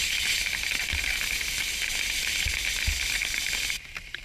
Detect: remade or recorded recorded